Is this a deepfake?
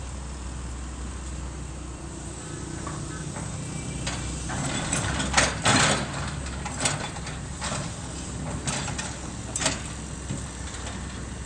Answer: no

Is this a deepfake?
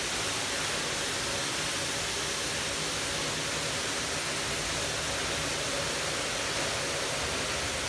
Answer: no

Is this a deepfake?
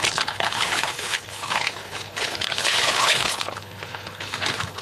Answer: yes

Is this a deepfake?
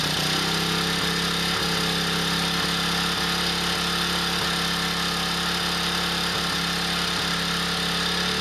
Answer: no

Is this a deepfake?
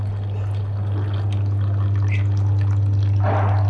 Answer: no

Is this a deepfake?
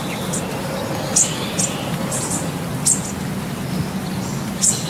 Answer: no